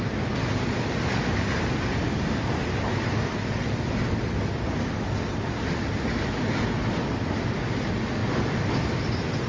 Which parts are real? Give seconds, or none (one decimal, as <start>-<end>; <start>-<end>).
0.0-9.5